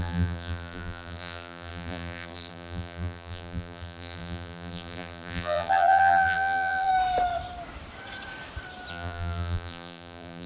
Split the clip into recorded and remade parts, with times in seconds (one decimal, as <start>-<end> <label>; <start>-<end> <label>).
0.0-6.9 remade; 6.9-8.9 recorded; 8.9-10.5 remade